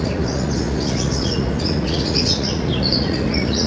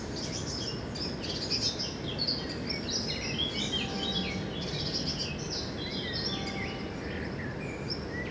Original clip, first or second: second